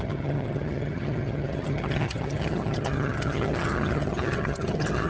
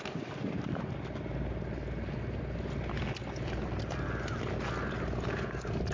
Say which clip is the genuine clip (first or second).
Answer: second